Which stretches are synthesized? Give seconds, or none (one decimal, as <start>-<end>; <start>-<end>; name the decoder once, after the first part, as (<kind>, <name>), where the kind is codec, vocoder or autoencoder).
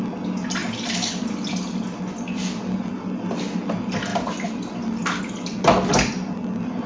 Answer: none